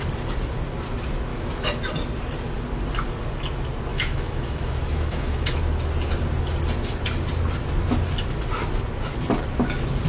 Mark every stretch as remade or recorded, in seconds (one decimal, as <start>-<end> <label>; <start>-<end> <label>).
0.0-1.3 recorded; 1.3-1.9 remade; 1.9-3.9 recorded; 3.9-5.6 remade; 5.6-10.1 recorded